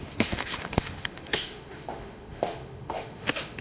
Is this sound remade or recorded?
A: remade